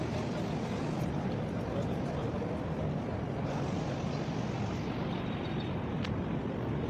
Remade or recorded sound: recorded